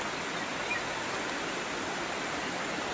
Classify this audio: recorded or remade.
recorded